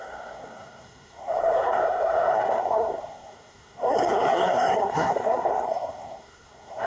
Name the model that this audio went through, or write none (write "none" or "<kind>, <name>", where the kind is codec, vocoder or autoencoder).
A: codec, SNAC